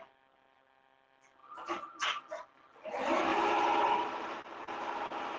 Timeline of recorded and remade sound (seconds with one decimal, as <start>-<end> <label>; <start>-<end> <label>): 0.0-5.4 recorded